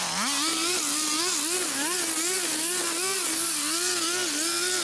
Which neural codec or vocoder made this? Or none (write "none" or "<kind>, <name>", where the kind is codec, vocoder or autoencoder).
none